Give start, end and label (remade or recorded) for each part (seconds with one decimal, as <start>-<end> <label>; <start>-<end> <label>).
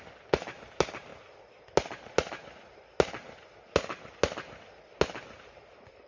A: 0.0-6.1 recorded